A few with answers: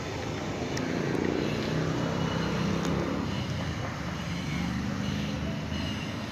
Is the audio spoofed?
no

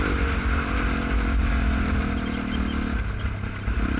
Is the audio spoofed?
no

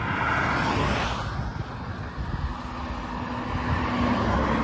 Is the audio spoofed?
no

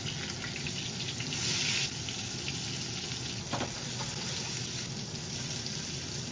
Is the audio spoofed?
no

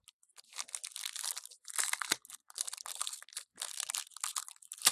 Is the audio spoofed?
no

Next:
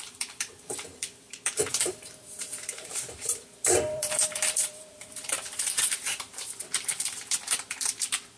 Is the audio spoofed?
yes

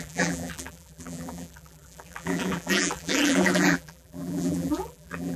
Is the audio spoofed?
yes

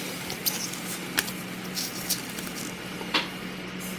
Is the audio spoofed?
no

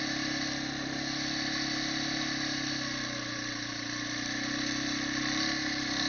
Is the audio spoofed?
no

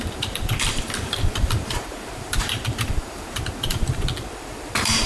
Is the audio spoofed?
yes